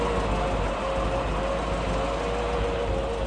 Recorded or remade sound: recorded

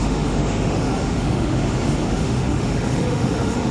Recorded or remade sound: remade